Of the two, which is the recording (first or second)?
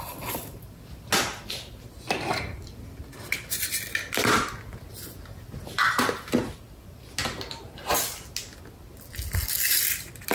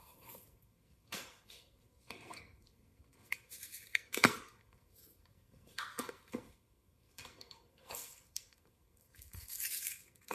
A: first